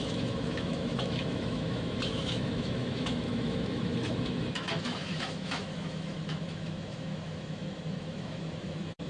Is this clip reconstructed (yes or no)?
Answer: yes